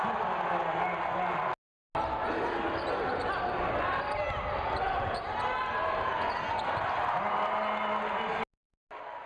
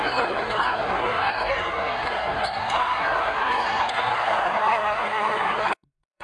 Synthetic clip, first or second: second